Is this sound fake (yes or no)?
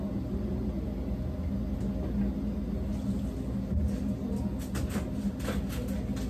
no